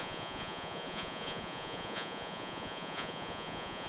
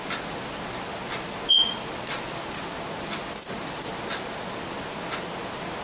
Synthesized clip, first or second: first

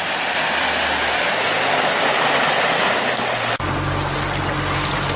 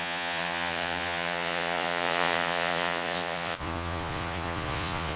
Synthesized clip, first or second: second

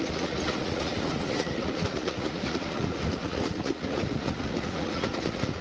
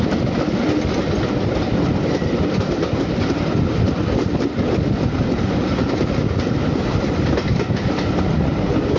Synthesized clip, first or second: first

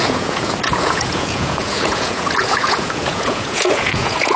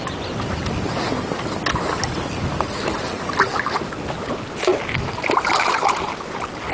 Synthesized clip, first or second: first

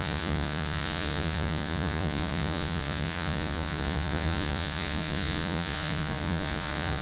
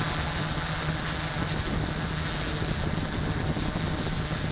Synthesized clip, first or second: first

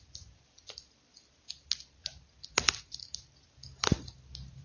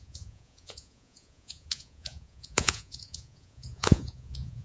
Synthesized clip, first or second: second